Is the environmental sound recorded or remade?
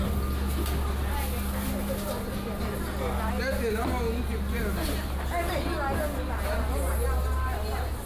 recorded